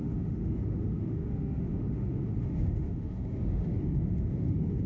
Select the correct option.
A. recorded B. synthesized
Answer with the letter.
B